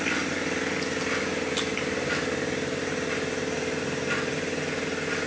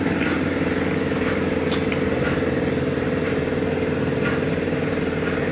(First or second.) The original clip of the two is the first